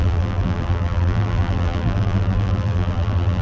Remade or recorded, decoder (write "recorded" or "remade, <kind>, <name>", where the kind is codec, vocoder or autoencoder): remade, vocoder, BigVGAN v2